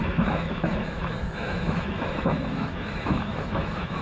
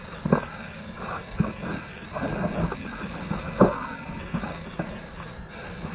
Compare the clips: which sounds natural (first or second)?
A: second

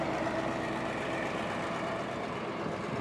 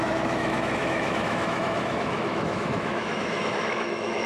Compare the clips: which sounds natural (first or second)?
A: first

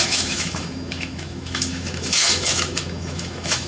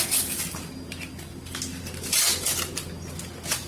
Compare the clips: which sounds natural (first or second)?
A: second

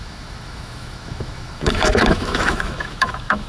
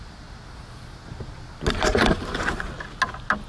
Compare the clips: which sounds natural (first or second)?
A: second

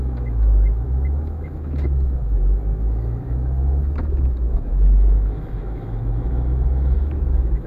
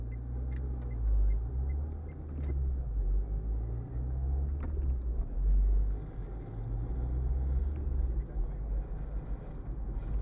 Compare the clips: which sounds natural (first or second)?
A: second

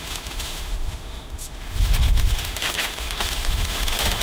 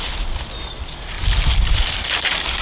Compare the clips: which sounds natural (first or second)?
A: second